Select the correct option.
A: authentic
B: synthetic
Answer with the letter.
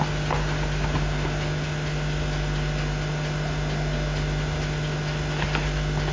A